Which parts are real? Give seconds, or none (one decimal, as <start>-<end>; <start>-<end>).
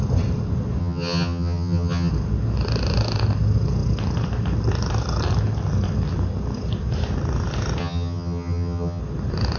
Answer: 0.0-0.8; 2.1-7.8; 9.0-9.6